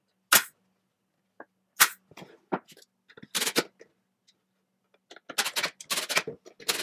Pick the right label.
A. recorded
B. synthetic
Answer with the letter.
A